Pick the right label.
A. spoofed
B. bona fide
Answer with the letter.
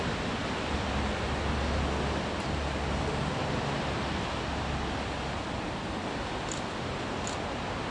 B